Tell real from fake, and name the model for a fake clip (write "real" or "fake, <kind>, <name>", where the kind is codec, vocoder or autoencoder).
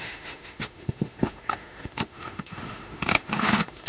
fake, autoencoder, DAC-VAE